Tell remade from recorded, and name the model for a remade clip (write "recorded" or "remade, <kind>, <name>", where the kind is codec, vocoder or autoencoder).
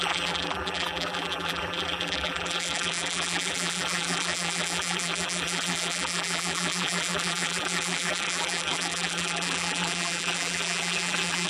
remade, vocoder, BigVGAN v2